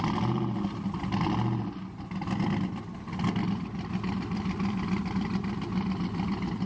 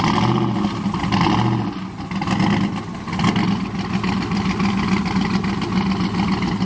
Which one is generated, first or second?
first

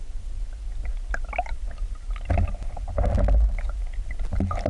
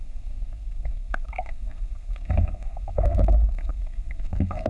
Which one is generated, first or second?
second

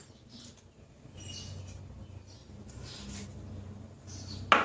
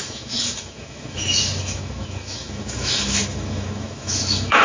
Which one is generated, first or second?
second